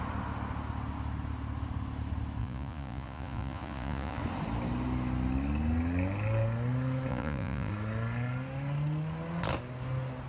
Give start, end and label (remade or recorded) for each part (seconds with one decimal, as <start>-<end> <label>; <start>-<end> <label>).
0.0-2.4 recorded; 2.4-4.2 remade; 4.2-7.1 recorded; 7.1-7.7 remade; 7.7-10.3 recorded